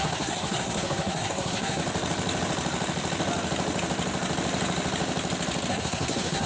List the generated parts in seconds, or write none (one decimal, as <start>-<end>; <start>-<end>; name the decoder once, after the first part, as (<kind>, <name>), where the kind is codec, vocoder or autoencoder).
0.0-1.8 (codec, SNAC); 5.7-6.5